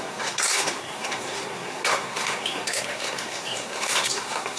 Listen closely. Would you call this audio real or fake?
fake